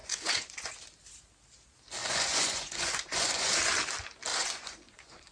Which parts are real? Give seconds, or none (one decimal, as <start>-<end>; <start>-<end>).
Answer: 0.7-2.0; 3.6-4.3